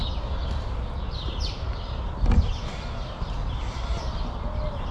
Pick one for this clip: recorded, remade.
recorded